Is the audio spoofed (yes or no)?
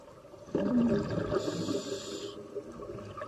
no